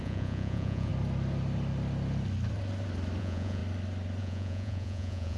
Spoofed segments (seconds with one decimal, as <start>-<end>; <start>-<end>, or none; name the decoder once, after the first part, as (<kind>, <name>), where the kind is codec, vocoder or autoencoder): 0.0-0.9 (vocoder, Vocos); 3.2-3.6; 4.2-5.4